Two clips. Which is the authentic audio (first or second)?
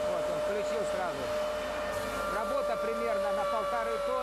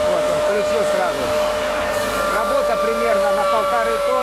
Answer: first